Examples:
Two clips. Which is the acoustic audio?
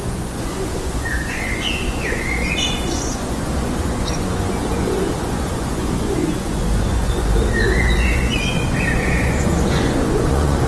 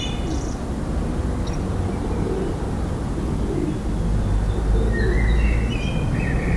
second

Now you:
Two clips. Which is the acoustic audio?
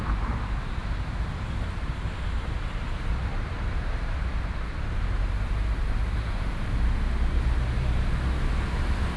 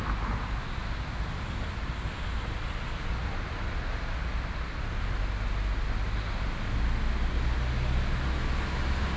second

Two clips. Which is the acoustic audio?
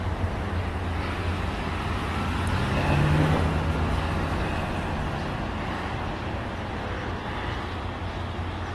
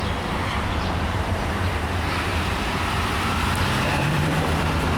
first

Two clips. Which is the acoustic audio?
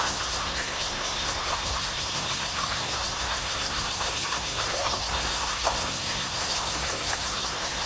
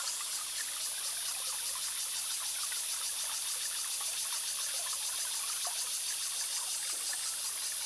second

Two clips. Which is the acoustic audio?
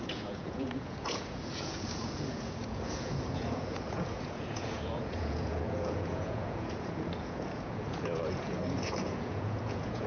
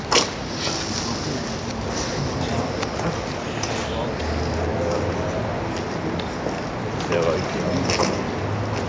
second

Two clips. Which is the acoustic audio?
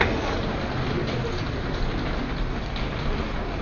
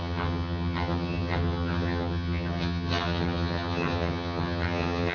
first